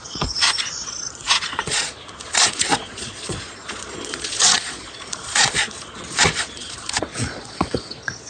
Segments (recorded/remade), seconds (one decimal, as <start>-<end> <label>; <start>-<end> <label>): 0.0-8.3 remade